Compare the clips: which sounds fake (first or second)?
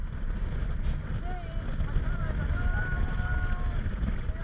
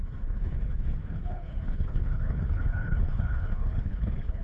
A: second